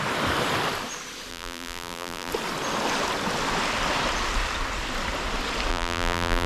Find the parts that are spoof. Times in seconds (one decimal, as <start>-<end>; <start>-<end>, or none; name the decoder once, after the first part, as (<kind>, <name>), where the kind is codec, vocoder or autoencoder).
1.3-2.3 (vocoder, BigVGAN v2); 5.7-6.5